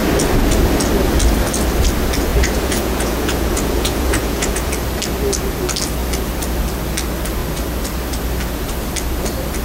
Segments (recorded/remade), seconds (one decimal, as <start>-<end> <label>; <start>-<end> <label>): 0.0-2.3 recorded; 2.3-4.7 remade; 4.7-9.6 recorded